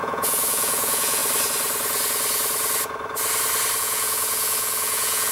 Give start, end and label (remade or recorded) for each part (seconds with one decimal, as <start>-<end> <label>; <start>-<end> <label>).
0.0-1.2 remade; 1.2-3.8 recorded; 3.8-5.3 remade